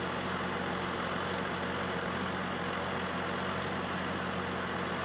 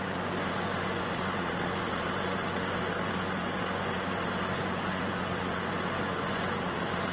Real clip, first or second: first